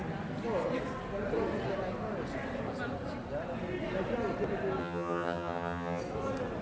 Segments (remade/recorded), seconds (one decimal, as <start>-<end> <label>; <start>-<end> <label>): 0.0-4.8 recorded; 4.8-6.0 remade; 6.0-6.6 recorded